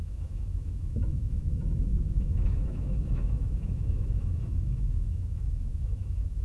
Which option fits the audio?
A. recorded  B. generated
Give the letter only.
B